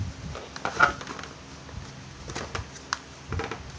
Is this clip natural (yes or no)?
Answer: yes